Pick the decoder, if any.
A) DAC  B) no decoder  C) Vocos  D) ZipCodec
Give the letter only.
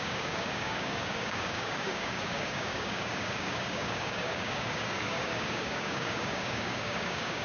A